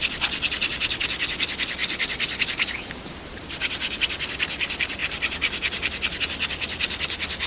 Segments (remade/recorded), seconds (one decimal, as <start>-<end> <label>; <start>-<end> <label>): 0.0-7.5 recorded